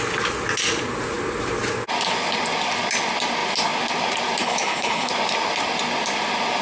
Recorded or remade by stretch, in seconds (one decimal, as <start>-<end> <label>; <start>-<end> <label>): 0.0-4.4 recorded; 4.4-5.1 remade; 5.1-6.6 recorded